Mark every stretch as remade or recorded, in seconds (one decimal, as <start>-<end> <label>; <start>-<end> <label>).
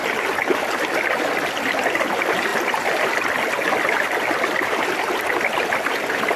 0.0-6.4 recorded